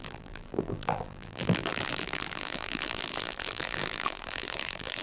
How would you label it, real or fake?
fake